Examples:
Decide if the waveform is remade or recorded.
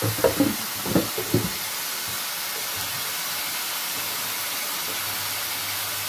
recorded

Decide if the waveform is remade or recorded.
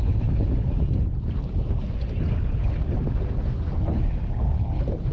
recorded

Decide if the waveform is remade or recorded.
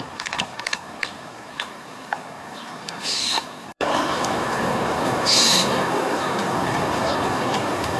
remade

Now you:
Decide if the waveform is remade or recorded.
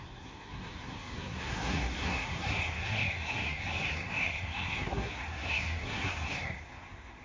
remade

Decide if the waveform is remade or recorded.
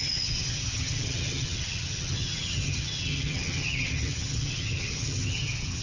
remade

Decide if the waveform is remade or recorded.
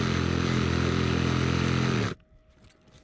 recorded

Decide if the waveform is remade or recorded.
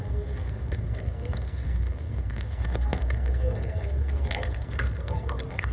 remade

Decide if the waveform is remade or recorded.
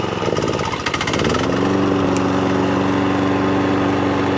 recorded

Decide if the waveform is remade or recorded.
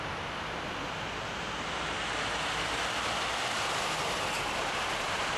recorded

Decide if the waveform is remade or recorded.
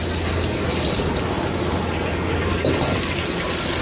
recorded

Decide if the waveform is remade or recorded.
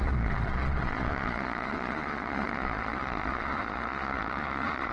remade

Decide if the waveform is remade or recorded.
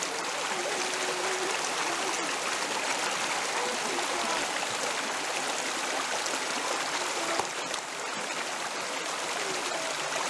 recorded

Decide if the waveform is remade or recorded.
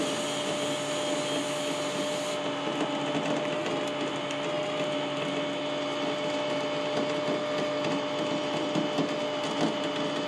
recorded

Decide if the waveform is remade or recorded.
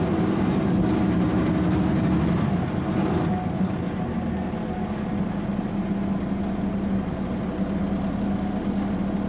recorded